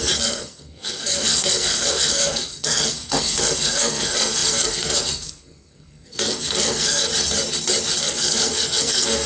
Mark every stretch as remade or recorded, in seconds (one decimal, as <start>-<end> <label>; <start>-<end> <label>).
0.0-7.1 remade; 7.1-8.0 recorded; 8.0-9.3 remade